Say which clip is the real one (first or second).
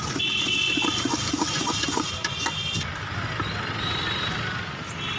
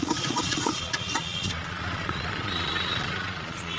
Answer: first